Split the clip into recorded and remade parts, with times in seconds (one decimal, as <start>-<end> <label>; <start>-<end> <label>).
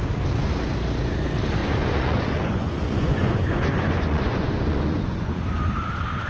0.0-1.6 recorded; 1.6-5.4 remade; 5.4-6.3 recorded